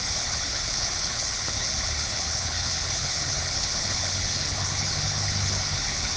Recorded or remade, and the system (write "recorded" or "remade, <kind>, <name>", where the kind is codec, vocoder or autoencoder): remade, codec, HILCodec